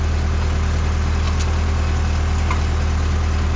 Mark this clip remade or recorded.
recorded